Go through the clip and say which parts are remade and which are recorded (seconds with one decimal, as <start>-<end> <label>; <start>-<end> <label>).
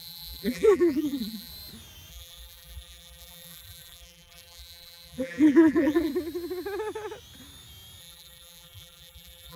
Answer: 0.0-1.5 remade; 1.5-2.1 recorded; 2.1-6.1 remade; 6.1-8.0 recorded; 8.0-9.6 remade